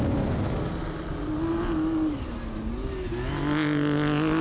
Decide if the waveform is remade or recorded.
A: recorded